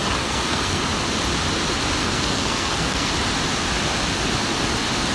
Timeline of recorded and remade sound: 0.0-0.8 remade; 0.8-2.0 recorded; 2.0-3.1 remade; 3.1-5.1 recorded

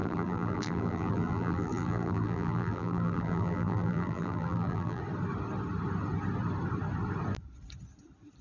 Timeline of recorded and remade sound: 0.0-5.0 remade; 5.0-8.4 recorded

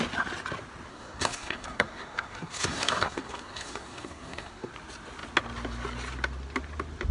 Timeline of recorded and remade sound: 0.0-0.9 recorded; 0.9-4.7 remade; 4.7-7.1 recorded